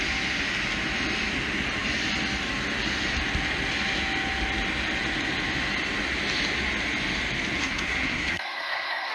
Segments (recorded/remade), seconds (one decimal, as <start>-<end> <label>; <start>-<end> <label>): 0.0-7.6 recorded; 7.6-9.1 remade